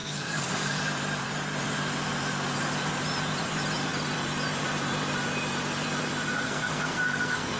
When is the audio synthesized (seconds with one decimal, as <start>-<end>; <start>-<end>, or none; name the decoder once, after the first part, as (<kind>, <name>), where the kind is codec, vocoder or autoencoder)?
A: 0.0-0.8 (codec, SNAC); 6.3-7.6